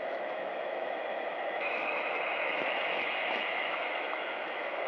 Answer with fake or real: fake